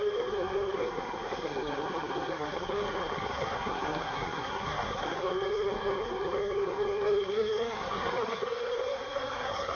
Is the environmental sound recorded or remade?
remade